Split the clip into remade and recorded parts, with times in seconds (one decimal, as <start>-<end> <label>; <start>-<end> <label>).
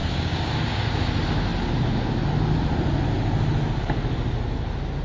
0.0-0.8 remade; 0.8-5.0 recorded